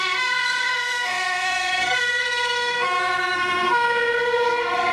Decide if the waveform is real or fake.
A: fake